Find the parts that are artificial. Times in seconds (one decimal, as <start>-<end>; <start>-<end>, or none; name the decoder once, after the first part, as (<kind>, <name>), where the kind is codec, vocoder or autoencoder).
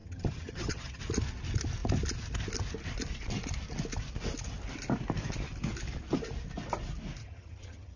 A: 0.0-1.0 (vocoder, HiFi-GAN); 7.2-8.0